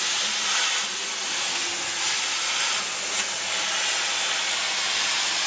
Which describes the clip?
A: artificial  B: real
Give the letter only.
B